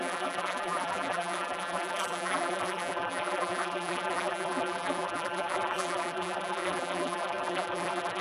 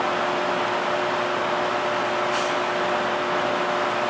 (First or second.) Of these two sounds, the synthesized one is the first